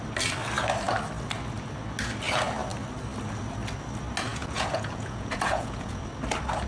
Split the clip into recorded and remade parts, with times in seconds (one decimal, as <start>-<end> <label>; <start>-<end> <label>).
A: 0.0-4.3 recorded; 4.3-6.0 remade; 6.0-6.7 recorded